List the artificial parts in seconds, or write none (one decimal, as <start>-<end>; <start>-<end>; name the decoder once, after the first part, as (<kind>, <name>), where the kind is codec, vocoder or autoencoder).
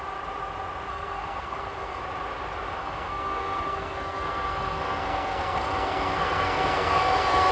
0.9-2.0 (codec, SNAC); 2.8-7.5